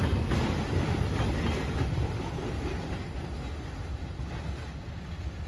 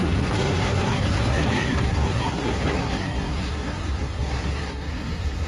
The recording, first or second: first